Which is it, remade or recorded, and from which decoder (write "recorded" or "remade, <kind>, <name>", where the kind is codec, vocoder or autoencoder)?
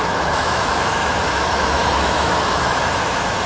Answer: remade, autoencoder, DAC-VAE